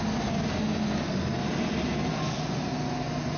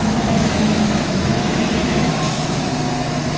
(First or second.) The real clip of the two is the first